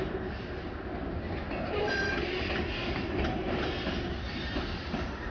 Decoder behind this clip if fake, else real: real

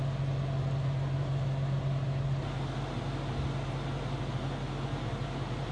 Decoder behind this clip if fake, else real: real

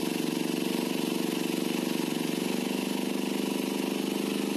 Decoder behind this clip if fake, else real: real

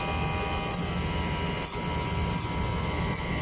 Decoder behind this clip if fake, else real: real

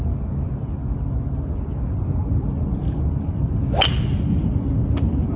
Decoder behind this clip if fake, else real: real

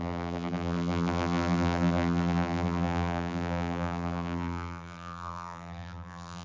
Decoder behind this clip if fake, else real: fake, vocoder, BigVGAN v2